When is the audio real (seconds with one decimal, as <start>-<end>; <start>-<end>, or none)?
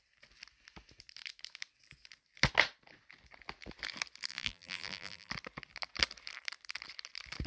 0.0-4.3; 5.3-7.5